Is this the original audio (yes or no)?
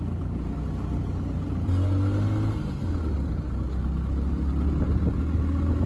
yes